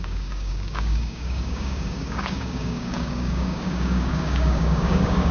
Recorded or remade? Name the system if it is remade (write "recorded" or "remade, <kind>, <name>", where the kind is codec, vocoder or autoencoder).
remade, codec, DAC